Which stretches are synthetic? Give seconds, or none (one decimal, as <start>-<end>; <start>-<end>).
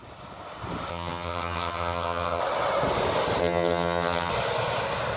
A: 0.9-2.4; 3.4-4.3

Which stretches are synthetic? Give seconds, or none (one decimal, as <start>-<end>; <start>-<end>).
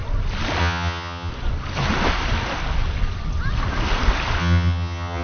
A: 0.6-1.3; 4.4-5.2